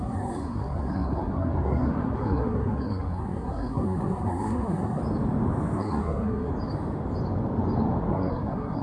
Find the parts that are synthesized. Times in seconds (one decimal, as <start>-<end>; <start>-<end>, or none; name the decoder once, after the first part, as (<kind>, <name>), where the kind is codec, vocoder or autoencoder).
0.0-5.0 (codec, SNAC); 5.8-6.5; 8.1-8.8